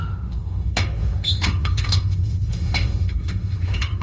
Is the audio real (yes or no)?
no